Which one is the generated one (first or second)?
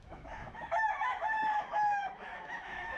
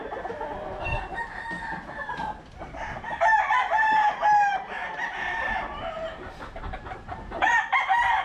first